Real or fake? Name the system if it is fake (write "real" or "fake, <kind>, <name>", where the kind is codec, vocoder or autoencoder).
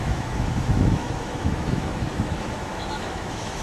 fake, autoencoder, DAC-VAE